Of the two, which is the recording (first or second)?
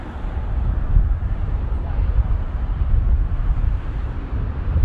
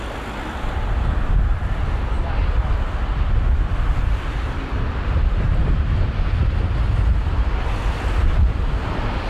second